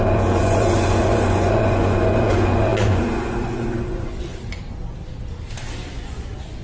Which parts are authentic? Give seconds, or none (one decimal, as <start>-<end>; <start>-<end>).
4.3-5.9